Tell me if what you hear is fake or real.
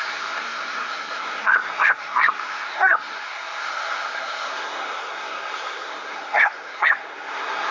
fake